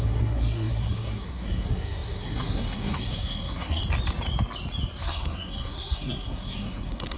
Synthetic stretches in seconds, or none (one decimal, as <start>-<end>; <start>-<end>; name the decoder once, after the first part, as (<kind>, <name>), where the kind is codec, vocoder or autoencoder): 0.0-3.8 (codec, SNAC); 5.0-7.2